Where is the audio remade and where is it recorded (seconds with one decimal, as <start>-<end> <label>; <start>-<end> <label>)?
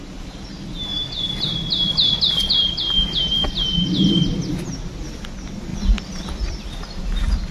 0.0-7.5 recorded